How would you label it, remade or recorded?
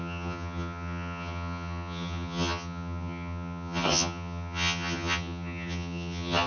remade